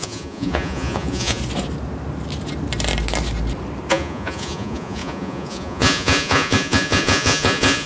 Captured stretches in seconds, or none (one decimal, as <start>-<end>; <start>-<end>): 1.4-3.9